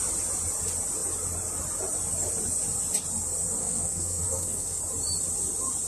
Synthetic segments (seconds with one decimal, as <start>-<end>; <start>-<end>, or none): 3.6-4.8